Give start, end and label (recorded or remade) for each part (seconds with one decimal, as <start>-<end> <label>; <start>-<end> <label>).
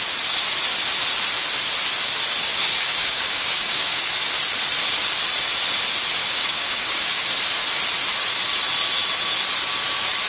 0.0-2.5 recorded; 2.5-4.0 remade; 4.0-6.2 recorded; 6.2-7.3 remade; 7.3-10.3 recorded